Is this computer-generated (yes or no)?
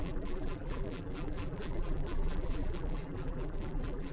yes